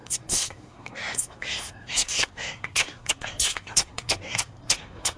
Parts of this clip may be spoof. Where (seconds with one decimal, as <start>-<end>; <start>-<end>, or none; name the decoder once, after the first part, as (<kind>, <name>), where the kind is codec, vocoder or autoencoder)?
0.0-5.2 (codec, SNAC)